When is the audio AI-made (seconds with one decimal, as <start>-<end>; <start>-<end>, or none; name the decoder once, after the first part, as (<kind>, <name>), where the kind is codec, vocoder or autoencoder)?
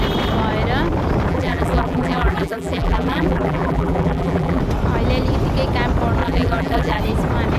1.3-4.6 (vocoder, BigVGAN v2); 6.2-7.0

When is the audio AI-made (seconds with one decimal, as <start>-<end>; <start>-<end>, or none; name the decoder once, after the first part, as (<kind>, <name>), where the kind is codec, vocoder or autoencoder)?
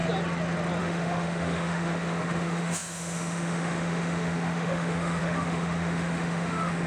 0.8-6.9 (autoencoder, DAC-VAE)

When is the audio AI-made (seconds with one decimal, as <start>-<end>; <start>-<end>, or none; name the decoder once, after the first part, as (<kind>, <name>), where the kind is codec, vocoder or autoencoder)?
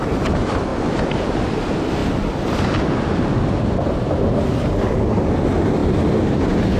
2.0-4.4 (vocoder, BigVGAN v2)